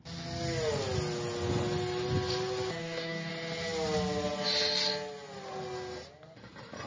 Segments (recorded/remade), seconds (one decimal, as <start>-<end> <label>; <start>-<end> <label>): 0.0-2.8 recorded; 2.8-3.3 remade; 3.3-6.9 recorded